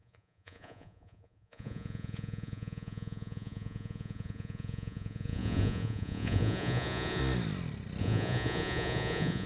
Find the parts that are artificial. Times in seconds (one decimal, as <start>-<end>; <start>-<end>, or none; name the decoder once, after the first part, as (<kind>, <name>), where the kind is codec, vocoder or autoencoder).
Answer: 0.0-7.2 (vocoder, Vocos); 8.0-9.5